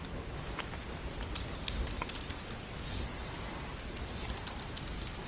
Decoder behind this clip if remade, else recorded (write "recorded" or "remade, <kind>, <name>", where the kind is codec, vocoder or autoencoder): recorded